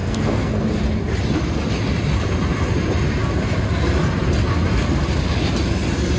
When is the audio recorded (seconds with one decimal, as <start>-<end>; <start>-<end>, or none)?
0.7-6.2